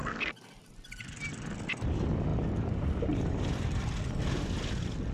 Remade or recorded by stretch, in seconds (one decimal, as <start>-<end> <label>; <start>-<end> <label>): 0.0-0.7 remade; 0.7-2.3 recorded; 2.3-4.2 remade; 4.2-5.1 recorded